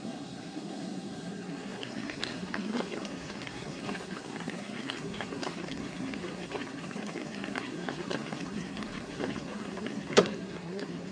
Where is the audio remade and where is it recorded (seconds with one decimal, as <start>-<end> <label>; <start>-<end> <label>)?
0.0-11.1 remade